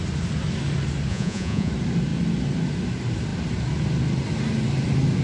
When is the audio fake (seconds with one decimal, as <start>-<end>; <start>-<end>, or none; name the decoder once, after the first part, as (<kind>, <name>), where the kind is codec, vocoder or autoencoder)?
1.1-1.7 (vocoder, Vocos)